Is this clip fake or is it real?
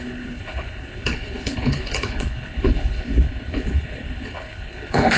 fake